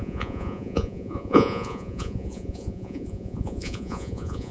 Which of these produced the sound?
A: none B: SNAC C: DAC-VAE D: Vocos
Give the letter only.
D